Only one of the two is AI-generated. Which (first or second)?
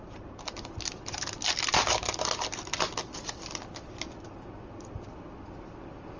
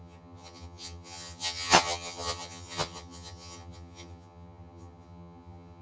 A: second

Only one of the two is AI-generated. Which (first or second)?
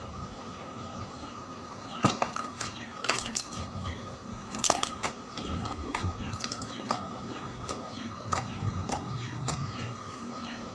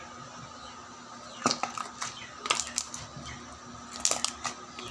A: first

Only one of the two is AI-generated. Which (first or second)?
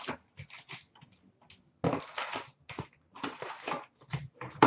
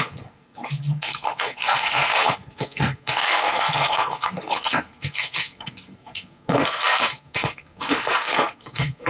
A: second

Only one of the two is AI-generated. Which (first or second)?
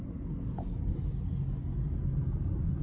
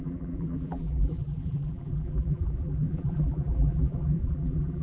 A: second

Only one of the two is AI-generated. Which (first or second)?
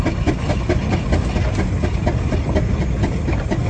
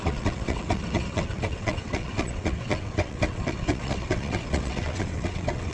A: second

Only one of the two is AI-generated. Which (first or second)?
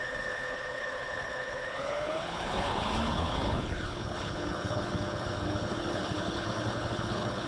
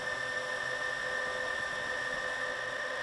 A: first